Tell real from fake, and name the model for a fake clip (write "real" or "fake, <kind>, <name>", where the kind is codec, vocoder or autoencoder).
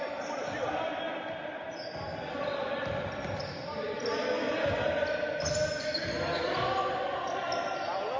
real